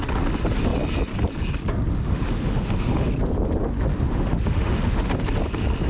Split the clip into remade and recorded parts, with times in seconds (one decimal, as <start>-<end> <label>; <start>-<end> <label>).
0.0-1.9 recorded; 1.9-3.1 remade; 3.1-3.9 recorded; 3.9-5.1 remade; 5.1-5.9 recorded